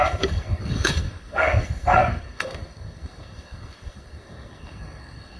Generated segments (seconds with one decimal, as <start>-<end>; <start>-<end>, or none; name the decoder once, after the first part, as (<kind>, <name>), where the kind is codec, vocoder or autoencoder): 0.0-5.4 (codec, SNAC)